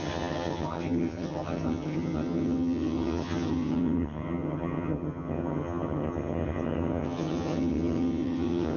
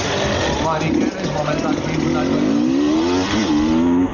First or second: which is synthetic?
first